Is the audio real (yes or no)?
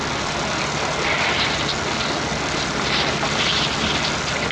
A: yes